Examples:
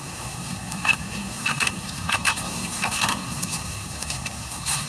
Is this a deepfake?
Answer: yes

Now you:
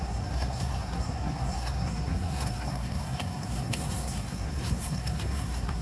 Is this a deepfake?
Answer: yes